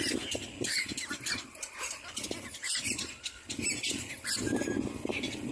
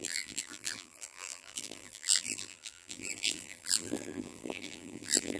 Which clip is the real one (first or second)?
first